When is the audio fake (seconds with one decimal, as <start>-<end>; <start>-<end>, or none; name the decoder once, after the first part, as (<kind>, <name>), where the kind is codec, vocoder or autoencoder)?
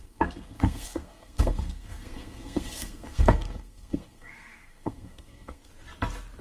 0.0-5.7 (codec, SNAC)